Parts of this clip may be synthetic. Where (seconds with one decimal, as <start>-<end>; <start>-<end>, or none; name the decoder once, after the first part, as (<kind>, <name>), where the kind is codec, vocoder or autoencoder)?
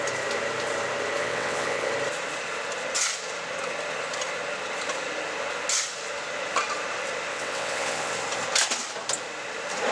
1.2-1.9 (vocoder, WaveNeXt); 7.3-8.1